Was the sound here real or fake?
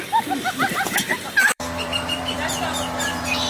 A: fake